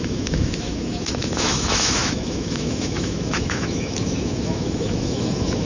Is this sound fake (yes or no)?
yes